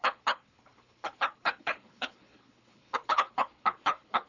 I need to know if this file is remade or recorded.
remade